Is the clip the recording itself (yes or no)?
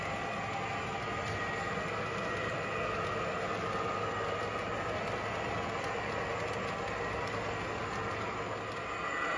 yes